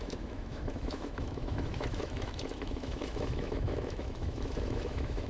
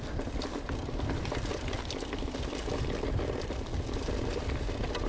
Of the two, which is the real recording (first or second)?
second